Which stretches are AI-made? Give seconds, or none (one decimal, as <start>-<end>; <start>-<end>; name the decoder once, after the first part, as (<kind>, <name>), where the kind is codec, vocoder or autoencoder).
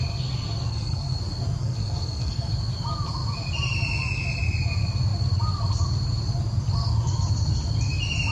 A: 0.7-1.2 (codec, SNAC); 1.6-2.5